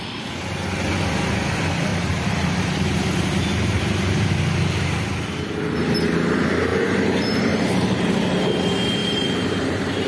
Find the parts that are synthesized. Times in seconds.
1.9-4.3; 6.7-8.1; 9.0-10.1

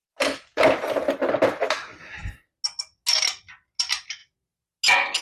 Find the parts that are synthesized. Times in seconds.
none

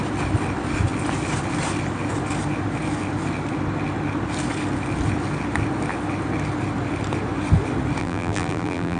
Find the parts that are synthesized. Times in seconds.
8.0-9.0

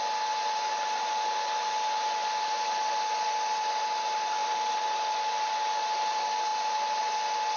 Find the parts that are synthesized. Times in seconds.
none

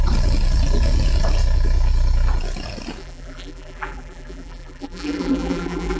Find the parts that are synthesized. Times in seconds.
3.0-6.0

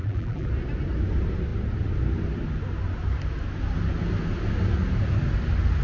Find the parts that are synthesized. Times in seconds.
0.0-0.5

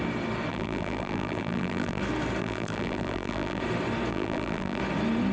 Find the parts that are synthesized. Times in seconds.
0.5-2.0; 2.4-3.6; 4.1-4.8